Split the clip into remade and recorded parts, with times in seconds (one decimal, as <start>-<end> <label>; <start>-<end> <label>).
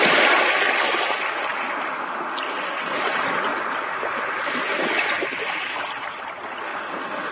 0.0-3.5 remade; 3.5-4.6 recorded; 4.6-6.7 remade; 6.7-7.3 recorded